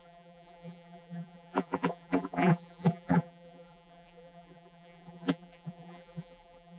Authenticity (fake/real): fake